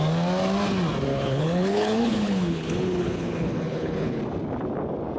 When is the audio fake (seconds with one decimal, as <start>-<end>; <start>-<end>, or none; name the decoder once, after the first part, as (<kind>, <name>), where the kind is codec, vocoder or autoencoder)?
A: 1.1-4.2 (codec, HILCodec)